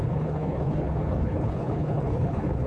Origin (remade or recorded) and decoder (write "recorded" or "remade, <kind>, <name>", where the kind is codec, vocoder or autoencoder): remade, codec, HILCodec